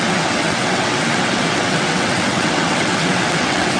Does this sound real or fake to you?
fake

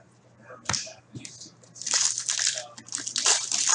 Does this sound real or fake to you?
real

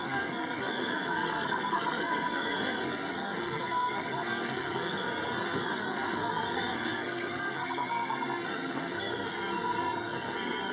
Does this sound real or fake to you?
fake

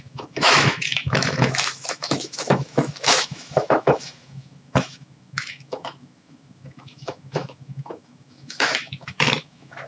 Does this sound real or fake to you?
fake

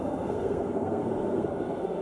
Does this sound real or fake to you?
fake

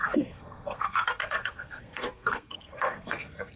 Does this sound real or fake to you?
fake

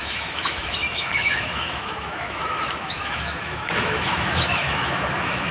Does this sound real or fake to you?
fake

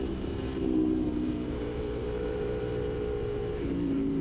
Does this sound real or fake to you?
fake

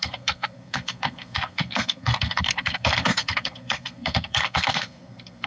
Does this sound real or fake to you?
fake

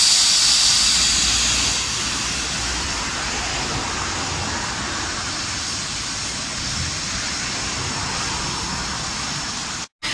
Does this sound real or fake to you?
real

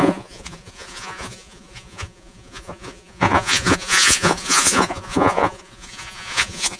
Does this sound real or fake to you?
fake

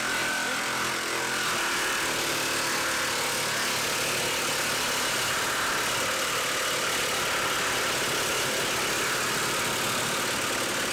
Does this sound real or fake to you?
real